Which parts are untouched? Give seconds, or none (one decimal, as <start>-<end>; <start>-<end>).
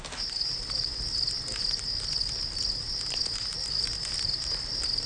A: 0.0-5.1